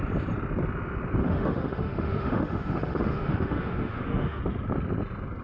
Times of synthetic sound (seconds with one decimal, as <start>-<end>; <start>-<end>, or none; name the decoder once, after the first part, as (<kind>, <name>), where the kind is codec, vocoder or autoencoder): 1.2-4.4 (autoencoder, DAC-VAE)

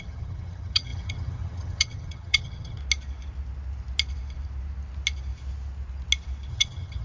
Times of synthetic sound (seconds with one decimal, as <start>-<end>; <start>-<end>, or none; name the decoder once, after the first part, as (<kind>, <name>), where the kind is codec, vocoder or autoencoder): 0.0-2.8 (vocoder, HiFi-GAN); 6.5-7.0

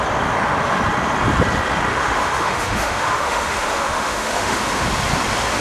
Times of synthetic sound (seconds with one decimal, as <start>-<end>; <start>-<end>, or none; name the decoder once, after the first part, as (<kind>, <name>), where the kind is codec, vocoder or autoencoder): 1.9-4.6 (autoencoder, DAC-VAE)

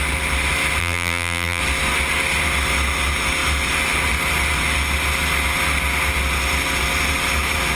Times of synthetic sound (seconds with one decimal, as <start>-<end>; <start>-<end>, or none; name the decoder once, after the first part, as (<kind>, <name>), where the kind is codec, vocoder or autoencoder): 0.8-1.6 (vocoder, BigVGAN v2)